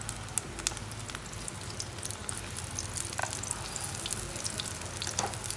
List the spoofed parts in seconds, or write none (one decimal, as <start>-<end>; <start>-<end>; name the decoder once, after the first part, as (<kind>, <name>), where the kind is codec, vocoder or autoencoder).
none